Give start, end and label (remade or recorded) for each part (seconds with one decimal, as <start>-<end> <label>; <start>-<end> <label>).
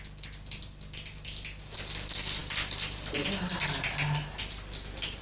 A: 0.0-5.2 recorded